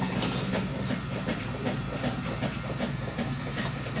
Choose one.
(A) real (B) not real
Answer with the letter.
B